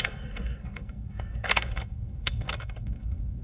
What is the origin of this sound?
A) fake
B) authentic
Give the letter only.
A